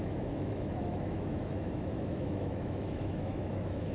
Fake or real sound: fake